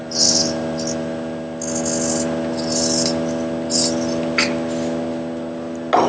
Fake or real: real